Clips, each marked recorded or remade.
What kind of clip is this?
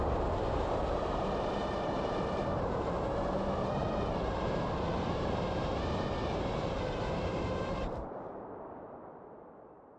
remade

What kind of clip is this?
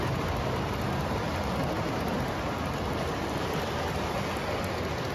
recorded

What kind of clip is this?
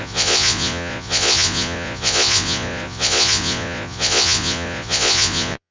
remade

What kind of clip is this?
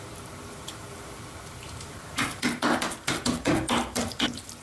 remade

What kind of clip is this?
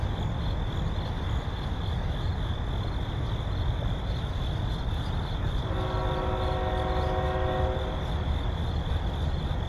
recorded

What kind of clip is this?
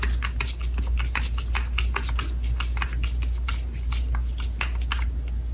recorded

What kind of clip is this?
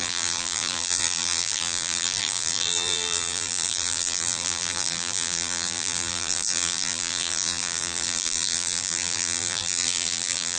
remade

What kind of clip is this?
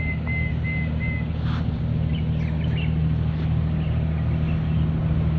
recorded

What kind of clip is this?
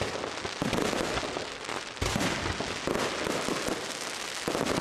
recorded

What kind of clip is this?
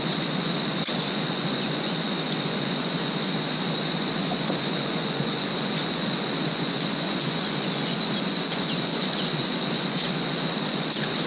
remade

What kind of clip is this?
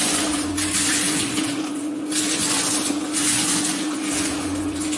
remade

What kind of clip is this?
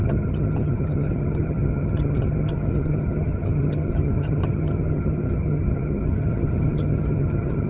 remade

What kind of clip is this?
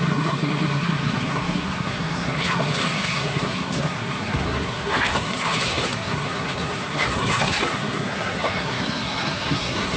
remade